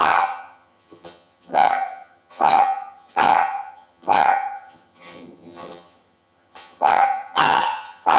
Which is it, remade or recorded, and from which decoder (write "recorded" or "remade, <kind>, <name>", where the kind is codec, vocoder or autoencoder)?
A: remade, vocoder, HiFi-GAN